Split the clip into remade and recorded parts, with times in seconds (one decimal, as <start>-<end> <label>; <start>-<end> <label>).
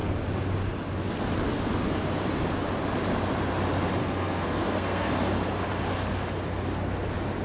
0.0-4.0 recorded; 4.0-5.1 remade; 5.1-7.4 recorded